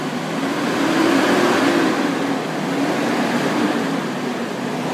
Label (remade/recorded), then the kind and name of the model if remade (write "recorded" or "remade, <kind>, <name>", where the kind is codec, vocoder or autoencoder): remade, vocoder, BigVGAN v2